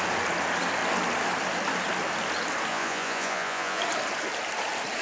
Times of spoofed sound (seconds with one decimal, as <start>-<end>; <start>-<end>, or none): 2.7-3.8